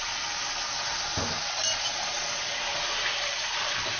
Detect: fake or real real